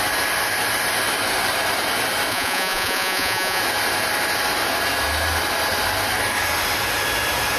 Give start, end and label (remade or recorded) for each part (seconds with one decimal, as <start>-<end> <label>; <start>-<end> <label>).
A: 0.0-2.3 recorded; 2.3-3.6 remade; 3.6-7.6 recorded